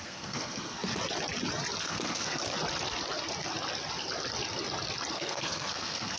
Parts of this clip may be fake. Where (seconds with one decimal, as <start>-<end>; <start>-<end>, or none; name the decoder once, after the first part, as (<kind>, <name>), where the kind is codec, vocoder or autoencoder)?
0.0-0.9 (codec, SNAC); 1.8-2.4; 5.1-6.2